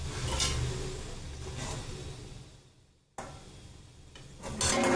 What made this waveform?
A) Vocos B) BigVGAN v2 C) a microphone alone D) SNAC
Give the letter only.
C